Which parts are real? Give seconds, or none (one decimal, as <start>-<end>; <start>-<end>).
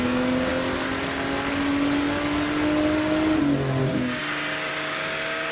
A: 0.5-3.8; 4.2-4.7